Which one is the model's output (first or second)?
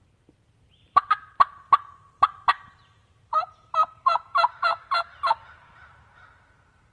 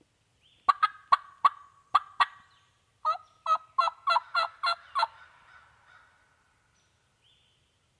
first